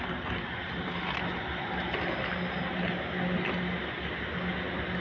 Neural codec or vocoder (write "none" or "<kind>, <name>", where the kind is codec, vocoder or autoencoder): none